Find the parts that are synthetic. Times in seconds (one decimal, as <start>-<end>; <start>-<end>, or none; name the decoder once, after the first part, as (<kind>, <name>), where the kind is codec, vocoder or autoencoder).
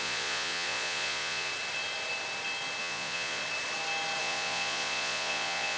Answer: 0.0-1.5 (vocoder, Vocos); 2.8-3.4; 4.2-5.8